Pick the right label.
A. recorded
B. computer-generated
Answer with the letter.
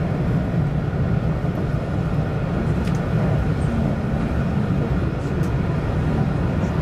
A